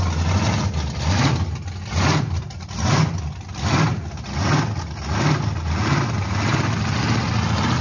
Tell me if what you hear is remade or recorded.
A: recorded